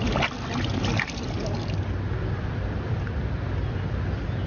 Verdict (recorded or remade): recorded